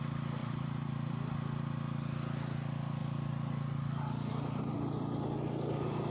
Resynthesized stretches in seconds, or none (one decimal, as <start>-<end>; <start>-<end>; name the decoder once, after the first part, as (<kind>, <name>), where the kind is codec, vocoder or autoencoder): 0.4-1.3 (vocoder, BigVGAN v2)